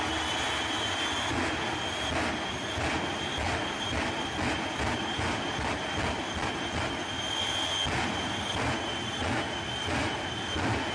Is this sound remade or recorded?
recorded